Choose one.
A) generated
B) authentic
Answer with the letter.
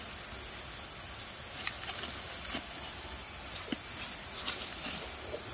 B